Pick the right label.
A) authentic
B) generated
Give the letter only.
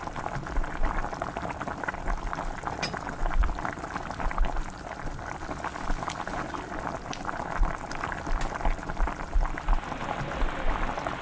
A